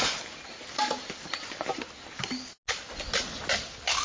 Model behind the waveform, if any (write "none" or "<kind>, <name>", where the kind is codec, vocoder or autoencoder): none